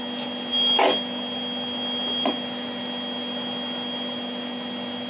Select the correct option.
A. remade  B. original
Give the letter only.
B